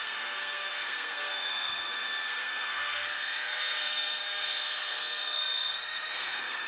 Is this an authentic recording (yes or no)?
no